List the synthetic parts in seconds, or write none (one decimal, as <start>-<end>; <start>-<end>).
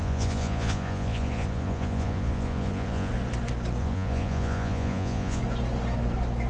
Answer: 0.0-3.1; 3.8-5.4